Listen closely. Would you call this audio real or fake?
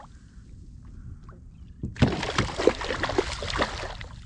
real